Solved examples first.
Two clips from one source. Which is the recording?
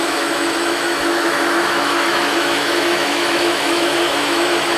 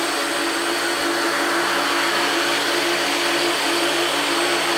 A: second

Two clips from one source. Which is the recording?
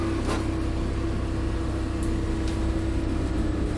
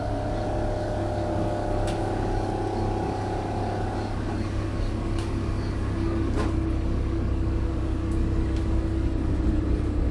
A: first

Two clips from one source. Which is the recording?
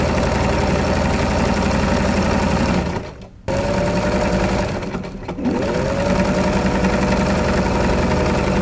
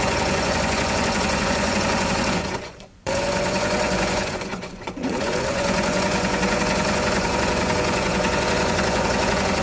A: first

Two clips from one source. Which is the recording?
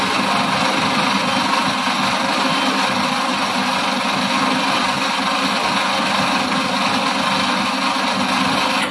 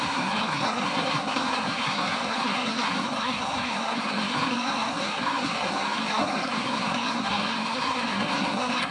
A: first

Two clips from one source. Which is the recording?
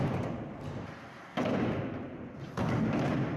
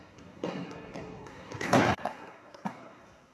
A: first